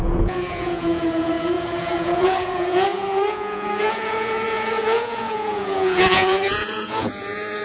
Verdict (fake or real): fake